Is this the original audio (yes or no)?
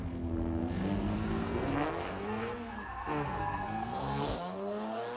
no